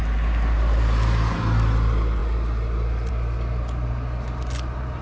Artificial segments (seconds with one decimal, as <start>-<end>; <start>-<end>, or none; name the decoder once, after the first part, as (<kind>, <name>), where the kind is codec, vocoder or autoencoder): none